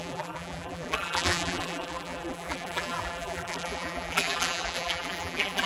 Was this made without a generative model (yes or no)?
no